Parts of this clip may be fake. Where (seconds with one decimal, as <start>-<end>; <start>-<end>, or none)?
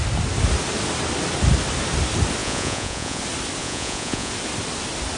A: 2.4-3.2; 3.6-4.3